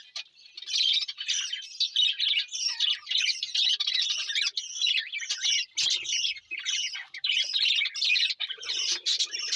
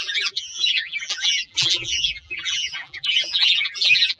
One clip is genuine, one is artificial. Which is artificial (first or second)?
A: second